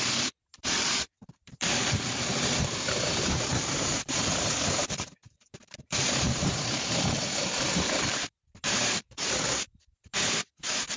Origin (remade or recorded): remade